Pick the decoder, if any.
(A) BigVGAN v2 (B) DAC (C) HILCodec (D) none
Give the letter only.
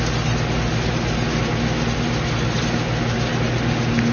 D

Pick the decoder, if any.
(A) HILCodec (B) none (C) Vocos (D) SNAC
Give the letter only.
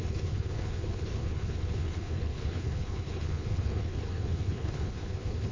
A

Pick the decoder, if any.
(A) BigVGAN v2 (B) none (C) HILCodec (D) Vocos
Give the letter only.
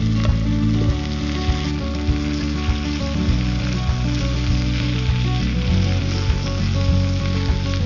B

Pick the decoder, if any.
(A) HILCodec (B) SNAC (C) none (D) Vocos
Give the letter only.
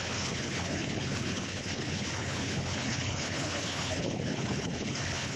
A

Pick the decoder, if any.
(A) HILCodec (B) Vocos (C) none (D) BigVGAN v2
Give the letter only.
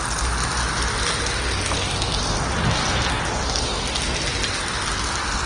C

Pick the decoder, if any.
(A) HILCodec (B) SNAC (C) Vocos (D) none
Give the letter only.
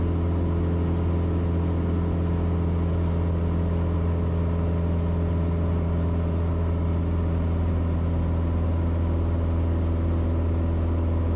D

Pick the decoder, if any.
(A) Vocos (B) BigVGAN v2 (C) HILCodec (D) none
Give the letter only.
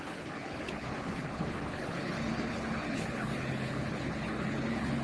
C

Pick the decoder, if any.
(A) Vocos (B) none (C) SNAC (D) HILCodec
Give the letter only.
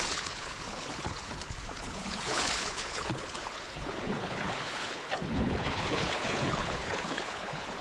D